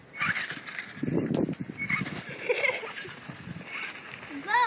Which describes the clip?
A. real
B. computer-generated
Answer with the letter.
A